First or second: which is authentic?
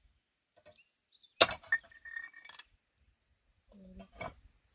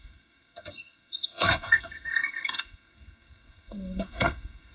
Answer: first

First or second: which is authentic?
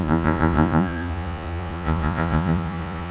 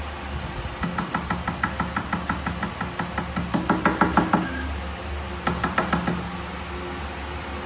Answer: second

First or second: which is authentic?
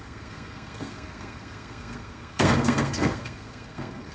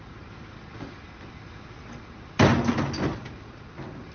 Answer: second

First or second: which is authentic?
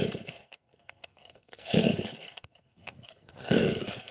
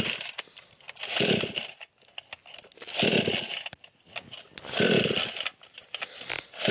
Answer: second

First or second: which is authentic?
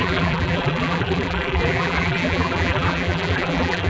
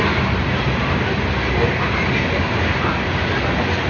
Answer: second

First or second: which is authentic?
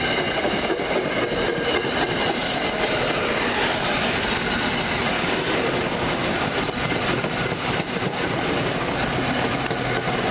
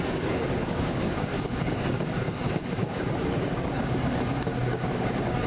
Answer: first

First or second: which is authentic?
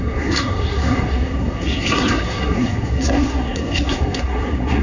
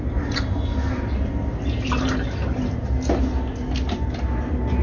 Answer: second